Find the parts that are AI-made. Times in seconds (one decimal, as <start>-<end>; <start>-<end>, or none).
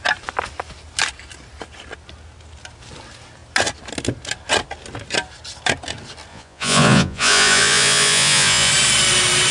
6.3-8.7